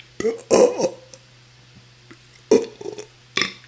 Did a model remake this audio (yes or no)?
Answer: no